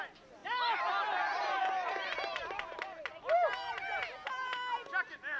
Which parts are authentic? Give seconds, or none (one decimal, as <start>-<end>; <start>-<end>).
0.0-5.4